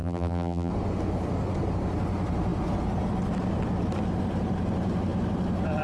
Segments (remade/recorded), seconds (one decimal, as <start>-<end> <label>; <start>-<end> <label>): 0.0-0.7 remade; 0.7-5.8 recorded

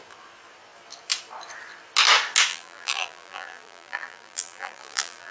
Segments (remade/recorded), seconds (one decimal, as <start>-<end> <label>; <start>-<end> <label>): 0.0-2.5 recorded; 2.5-5.3 remade